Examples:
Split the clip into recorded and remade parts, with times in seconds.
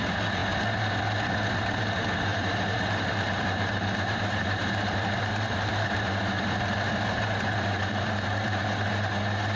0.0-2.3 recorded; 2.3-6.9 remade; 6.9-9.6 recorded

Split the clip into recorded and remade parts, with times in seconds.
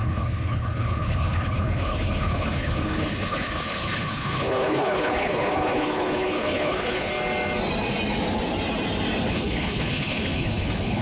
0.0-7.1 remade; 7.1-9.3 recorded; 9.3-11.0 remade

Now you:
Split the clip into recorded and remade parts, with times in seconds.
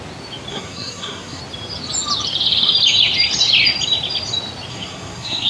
0.0-0.5 recorded; 0.5-1.4 remade; 1.4-4.7 recorded; 4.7-5.5 remade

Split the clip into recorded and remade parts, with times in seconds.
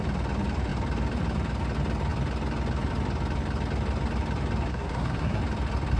0.0-4.7 recorded; 4.7-5.4 remade; 5.4-6.0 recorded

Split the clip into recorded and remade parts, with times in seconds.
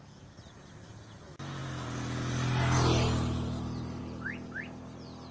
0.0-5.3 recorded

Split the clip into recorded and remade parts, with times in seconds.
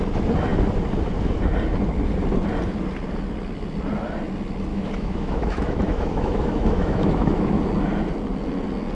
0.0-4.7 recorded; 4.7-7.6 remade; 7.6-8.9 recorded